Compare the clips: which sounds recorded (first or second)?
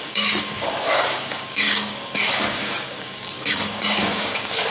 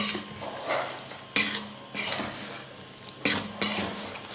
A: second